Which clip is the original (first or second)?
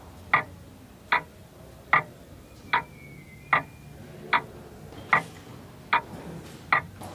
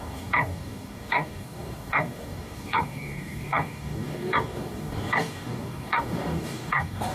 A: first